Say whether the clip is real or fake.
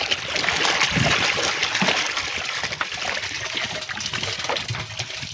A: real